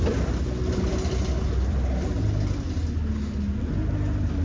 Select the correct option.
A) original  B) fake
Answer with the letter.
A